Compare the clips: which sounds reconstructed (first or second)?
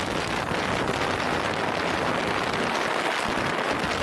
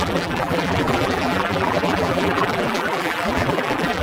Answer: second